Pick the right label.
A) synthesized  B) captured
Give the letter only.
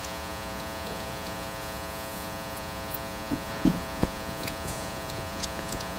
A